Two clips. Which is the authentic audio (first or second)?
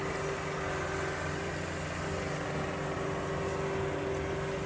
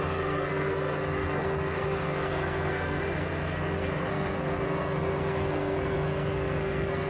first